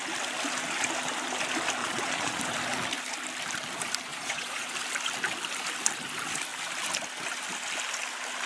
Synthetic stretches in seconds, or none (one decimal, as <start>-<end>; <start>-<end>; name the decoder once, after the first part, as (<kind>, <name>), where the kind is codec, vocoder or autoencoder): 1.8-2.4 (vocoder, Vocos); 4.1-4.7